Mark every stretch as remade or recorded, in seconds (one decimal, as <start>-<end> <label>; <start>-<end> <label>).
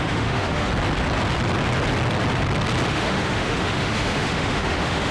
0.0-0.7 remade; 0.7-2.9 recorded; 2.9-5.1 remade